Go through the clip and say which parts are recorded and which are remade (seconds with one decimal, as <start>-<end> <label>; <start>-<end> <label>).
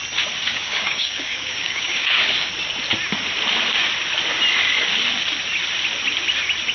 0.0-0.5 recorded; 0.5-2.5 remade; 2.5-6.7 recorded